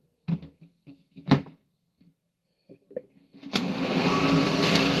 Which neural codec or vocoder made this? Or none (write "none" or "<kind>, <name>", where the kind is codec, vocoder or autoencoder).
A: codec, SNAC